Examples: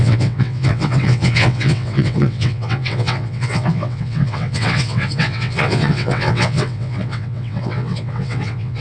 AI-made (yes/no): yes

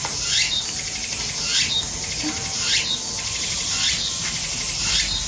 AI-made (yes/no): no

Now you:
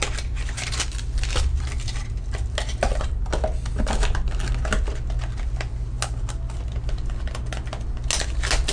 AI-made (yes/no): no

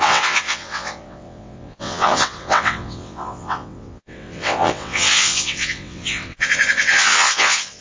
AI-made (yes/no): yes